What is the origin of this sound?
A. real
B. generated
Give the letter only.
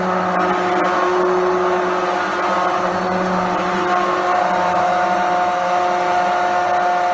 A